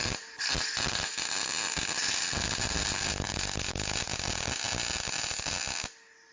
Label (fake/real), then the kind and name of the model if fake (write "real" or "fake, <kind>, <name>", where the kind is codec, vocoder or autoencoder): real